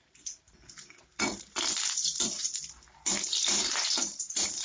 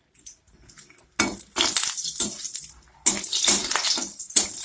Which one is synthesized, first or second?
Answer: first